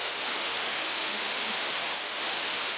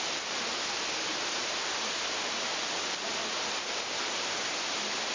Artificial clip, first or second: first